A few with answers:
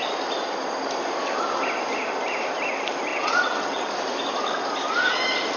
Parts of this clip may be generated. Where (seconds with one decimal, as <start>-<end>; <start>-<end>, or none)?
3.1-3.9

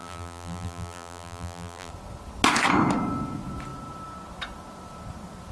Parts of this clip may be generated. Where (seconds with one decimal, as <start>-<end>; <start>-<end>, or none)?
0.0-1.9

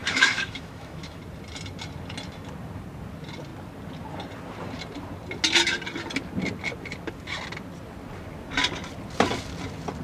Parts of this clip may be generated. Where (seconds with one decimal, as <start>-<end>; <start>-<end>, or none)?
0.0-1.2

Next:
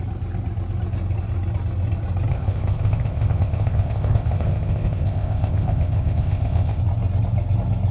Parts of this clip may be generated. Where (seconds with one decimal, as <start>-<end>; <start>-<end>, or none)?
2.3-6.8

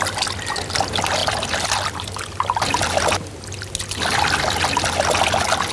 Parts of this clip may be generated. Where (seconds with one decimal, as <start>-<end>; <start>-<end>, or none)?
none

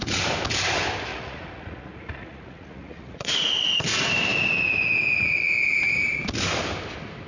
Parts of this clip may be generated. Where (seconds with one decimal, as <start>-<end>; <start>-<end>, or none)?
1.1-3.5

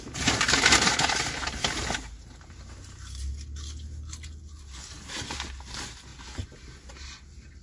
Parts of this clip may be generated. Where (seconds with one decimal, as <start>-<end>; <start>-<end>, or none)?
none

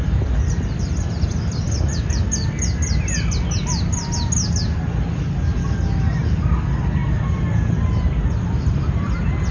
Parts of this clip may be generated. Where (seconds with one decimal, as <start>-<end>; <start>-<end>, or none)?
none